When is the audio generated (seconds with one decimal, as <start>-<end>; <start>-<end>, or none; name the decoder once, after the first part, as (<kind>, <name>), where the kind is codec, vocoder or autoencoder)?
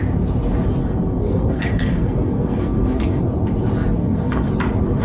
0.8-3.2 (codec, SNAC); 4.0-4.5